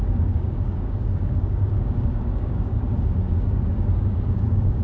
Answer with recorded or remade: remade